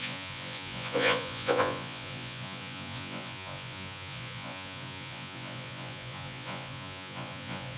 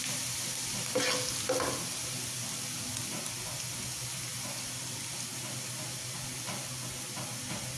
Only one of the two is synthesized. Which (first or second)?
first